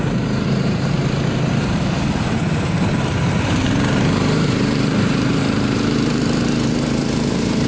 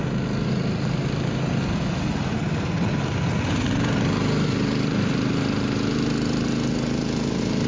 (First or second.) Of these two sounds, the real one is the second